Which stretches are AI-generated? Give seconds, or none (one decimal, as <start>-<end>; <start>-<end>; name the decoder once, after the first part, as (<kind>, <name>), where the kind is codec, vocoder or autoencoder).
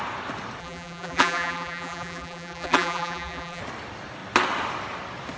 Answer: 0.6-3.6 (vocoder, BigVGAN v2)